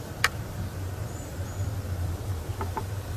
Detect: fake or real real